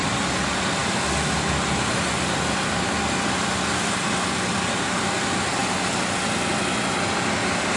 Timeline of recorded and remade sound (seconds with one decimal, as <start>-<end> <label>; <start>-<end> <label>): 0.0-7.8 recorded